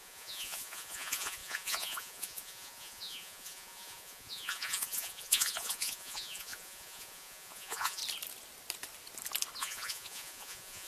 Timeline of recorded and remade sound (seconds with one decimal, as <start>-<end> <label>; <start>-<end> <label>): 0.0-8.0 remade; 8.0-9.6 recorded; 9.6-10.9 remade